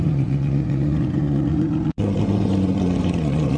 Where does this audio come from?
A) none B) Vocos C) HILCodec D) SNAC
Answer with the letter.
B